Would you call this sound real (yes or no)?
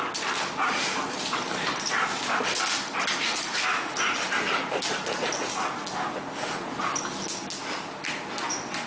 yes